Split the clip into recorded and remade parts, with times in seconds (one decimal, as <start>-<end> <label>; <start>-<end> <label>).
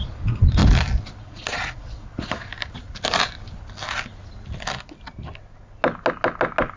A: 0.0-0.6 remade; 0.6-1.2 recorded; 1.2-2.5 remade; 2.5-6.8 recorded